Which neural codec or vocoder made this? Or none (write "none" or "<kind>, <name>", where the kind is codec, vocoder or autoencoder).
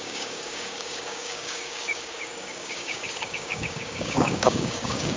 codec, DAC